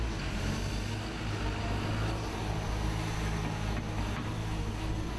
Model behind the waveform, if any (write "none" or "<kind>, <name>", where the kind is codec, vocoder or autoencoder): none